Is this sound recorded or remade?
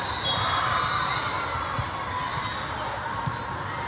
recorded